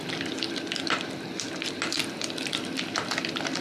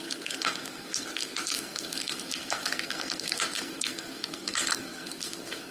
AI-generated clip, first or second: second